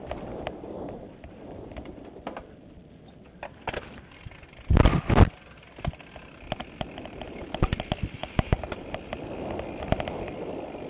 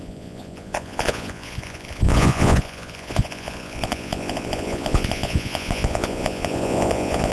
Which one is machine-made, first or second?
second